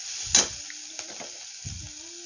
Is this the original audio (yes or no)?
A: yes